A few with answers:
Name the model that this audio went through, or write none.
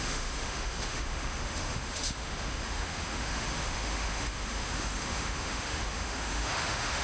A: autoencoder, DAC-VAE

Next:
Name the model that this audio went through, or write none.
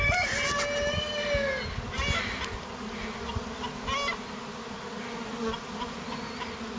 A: none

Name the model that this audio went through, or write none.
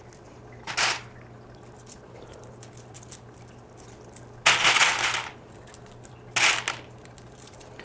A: none